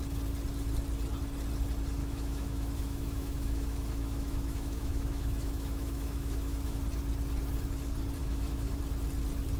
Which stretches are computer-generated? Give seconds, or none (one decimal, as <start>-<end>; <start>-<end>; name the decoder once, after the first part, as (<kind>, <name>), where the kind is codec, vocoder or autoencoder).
2.0-6.8 (autoencoder, DAC-VAE); 8.2-8.8